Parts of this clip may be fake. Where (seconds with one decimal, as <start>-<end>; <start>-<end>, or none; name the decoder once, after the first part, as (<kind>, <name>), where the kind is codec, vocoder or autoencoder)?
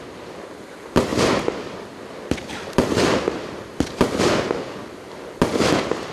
none